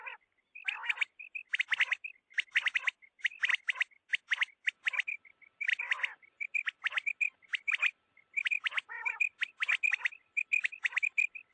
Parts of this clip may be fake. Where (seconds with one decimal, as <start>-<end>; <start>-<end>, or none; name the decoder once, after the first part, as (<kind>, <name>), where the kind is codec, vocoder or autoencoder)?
none